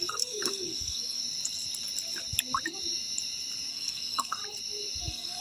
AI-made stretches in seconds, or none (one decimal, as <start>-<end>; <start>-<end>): 0.0-1.2; 3.7-4.4; 5.0-5.4